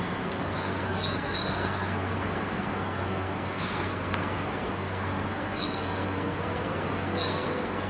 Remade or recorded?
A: remade